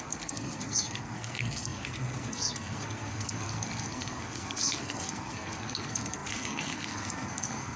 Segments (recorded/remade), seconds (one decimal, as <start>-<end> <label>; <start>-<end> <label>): 0.0-7.8 remade